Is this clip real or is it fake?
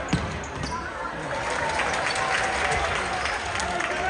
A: real